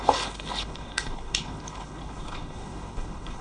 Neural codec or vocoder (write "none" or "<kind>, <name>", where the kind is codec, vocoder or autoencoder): codec, HILCodec